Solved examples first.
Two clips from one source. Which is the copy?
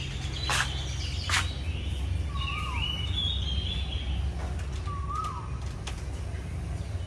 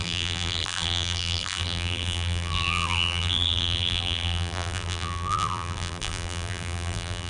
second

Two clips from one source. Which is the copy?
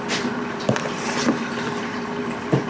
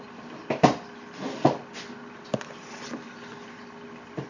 first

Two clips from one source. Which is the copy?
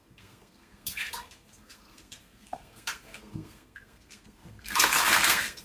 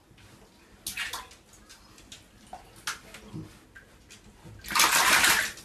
first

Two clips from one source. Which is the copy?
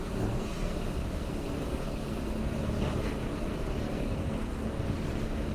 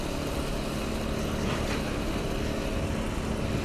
first